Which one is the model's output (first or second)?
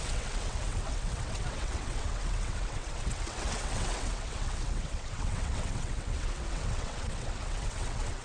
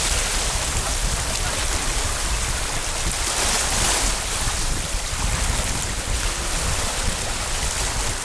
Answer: first